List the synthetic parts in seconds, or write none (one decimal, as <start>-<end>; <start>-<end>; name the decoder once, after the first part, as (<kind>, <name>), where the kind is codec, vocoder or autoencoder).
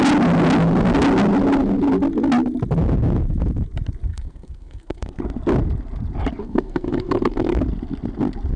4.1-5.2 (codec, SNAC); 6.4-7.6